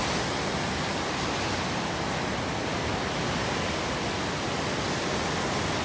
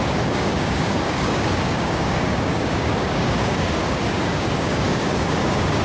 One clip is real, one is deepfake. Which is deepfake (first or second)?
second